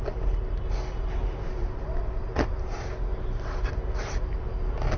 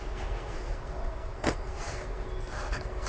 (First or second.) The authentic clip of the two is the first